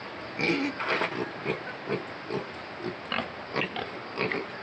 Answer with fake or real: real